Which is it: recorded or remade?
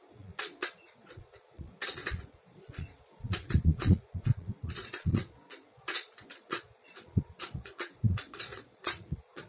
remade